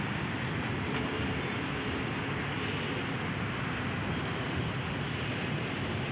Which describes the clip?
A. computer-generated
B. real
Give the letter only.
B